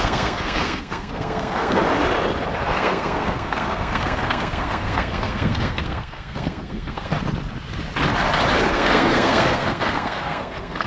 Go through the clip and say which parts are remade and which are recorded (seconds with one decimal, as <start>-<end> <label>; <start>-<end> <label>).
0.0-1.8 remade; 1.8-2.6 recorded; 2.6-7.1 remade; 7.1-8.7 recorded; 8.7-10.9 remade